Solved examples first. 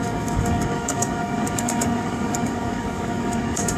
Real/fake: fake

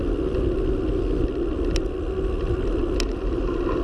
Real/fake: real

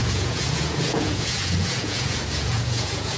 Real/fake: fake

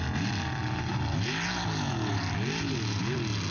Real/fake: real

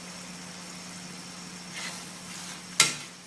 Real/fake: real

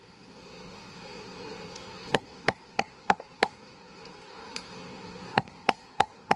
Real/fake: fake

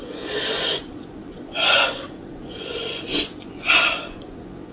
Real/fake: fake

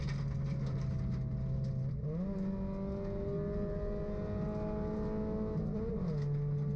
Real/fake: real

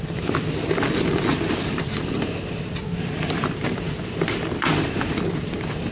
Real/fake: real